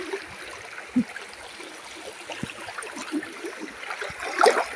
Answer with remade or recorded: recorded